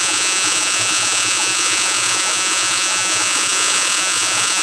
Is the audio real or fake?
fake